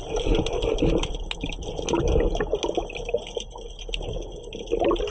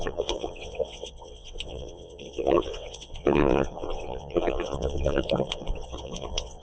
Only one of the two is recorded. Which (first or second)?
first